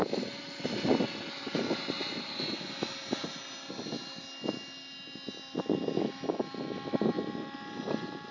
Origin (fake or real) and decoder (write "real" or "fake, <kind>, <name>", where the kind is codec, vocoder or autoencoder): real